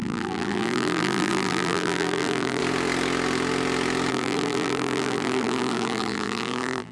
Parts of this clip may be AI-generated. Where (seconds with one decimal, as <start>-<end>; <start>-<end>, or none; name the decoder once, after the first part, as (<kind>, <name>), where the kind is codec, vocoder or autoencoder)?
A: 0.0-2.6 (vocoder, BigVGAN v2); 4.1-6.9